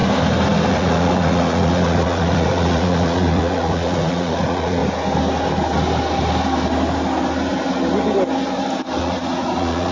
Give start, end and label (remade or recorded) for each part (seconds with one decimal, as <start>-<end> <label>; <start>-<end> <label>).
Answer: 0.0-0.7 recorded; 0.7-4.8 remade; 4.8-9.0 recorded; 9.0-9.9 remade